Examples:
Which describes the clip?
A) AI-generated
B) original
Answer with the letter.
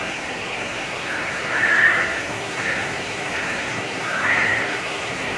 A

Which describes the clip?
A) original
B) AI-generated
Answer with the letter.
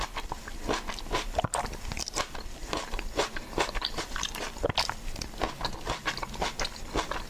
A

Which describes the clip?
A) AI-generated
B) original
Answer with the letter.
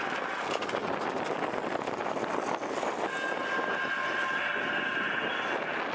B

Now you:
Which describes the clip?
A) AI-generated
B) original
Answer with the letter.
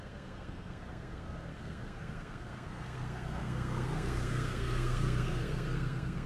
A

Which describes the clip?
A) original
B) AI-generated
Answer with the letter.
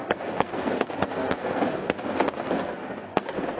B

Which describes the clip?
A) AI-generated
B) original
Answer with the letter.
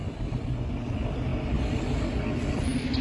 B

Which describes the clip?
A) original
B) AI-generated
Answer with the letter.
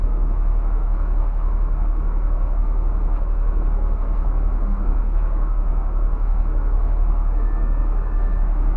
B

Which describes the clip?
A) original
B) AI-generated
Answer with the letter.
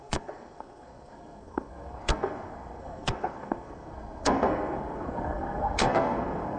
B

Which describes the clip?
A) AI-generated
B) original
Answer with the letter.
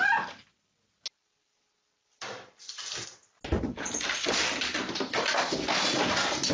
B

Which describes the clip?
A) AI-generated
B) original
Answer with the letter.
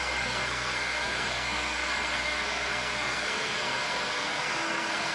A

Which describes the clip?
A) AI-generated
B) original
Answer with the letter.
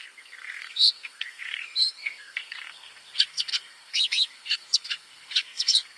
A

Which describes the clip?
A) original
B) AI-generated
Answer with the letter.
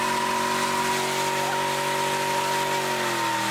A